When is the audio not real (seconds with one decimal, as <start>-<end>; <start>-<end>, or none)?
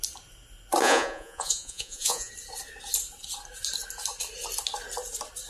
0.8-2.3